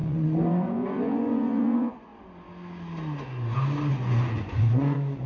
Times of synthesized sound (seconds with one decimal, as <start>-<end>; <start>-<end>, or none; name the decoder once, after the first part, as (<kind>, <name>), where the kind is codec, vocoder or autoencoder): 0.0-2.1 (vocoder, Vocos); 3.9-5.3